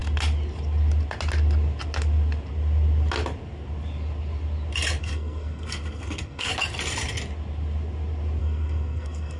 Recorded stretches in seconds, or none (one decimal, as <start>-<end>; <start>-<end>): 0.0-5.0; 6.5-8.4